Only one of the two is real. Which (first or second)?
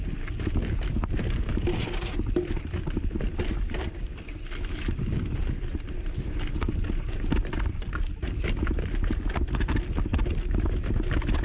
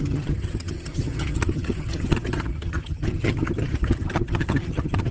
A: first